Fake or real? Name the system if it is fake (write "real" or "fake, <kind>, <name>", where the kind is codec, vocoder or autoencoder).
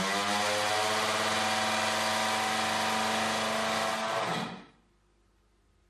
real